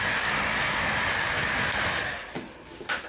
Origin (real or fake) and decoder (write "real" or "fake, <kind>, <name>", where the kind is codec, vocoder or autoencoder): real